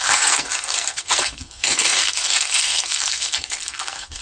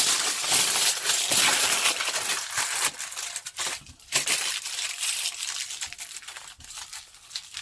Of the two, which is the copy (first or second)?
first